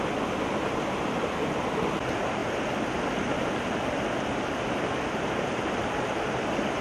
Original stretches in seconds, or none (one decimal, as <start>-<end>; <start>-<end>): 0.0-6.8